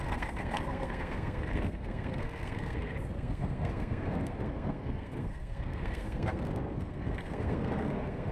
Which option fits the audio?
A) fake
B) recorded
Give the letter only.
A